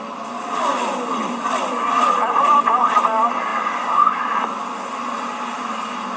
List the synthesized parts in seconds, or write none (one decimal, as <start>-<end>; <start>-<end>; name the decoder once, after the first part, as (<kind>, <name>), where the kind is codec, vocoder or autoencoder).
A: 0.7-3.0 (vocoder, BigVGAN v2); 3.5-4.2